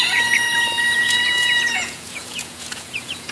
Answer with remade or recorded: remade